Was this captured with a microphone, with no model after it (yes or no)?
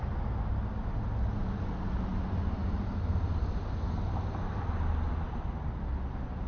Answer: yes